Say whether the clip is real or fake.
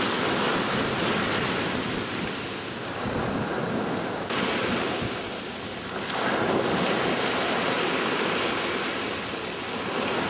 real